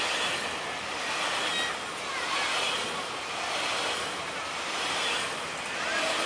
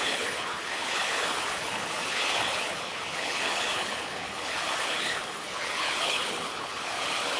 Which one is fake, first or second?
second